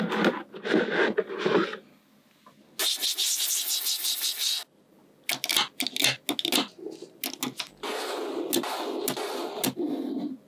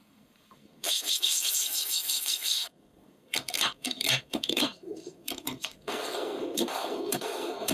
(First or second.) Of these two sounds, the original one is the first